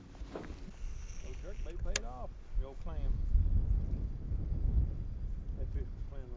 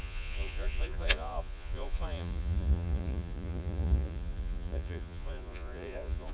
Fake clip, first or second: second